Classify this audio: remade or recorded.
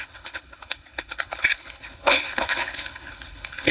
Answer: remade